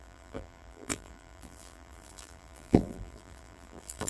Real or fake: fake